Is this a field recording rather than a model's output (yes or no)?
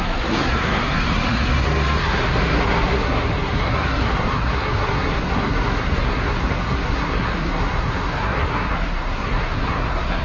no